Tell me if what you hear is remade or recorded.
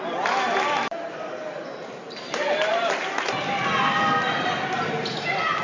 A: recorded